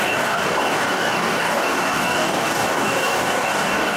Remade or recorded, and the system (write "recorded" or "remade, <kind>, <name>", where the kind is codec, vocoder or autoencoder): remade, codec, DAC